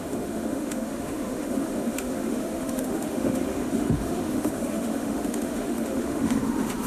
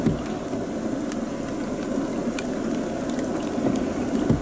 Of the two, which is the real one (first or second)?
second